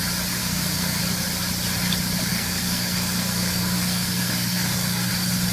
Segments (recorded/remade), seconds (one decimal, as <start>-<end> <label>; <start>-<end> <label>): 0.0-0.4 recorded; 0.4-1.0 remade; 1.0-2.3 recorded; 2.3-5.1 remade; 5.1-5.5 recorded